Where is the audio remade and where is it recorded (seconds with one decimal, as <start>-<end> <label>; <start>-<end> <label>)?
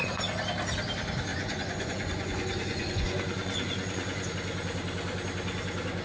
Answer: 0.0-1.3 recorded; 1.3-4.3 remade; 4.3-6.0 recorded